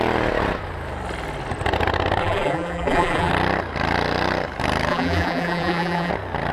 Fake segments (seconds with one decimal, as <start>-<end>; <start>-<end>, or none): 2.2-3.3; 4.9-6.1